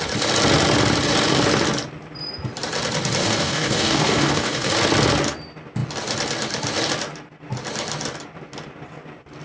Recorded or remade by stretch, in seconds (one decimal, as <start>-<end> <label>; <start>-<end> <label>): 0.0-3.2 recorded; 3.2-4.7 remade; 4.7-9.4 recorded